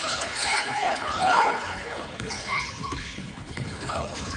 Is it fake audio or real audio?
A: fake